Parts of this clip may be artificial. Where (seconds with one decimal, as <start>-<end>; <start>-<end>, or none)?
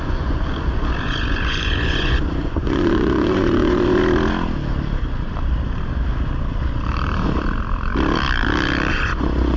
0.0-4.0; 8.9-9.6